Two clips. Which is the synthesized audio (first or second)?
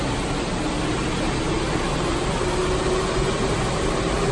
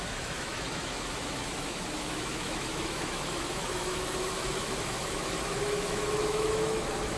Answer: second